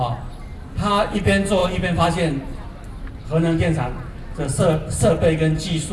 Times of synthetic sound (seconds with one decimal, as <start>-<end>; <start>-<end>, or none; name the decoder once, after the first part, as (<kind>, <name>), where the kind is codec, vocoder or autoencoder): none